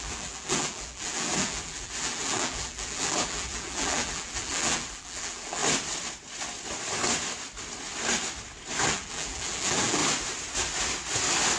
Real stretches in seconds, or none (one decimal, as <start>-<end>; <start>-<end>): 5.6-8.9; 10.0-11.6